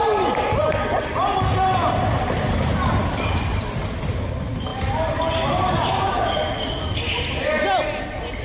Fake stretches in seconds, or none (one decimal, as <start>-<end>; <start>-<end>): none